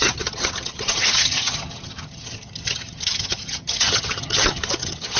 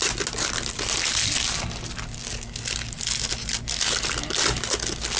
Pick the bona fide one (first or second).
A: second